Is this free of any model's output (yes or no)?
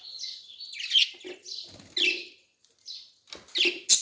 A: yes